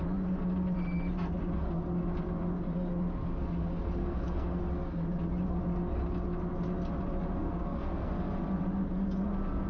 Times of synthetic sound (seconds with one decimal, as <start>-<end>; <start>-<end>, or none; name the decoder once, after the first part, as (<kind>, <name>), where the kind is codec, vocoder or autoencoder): 4.0-4.6 (codec, SNAC); 7.4-8.1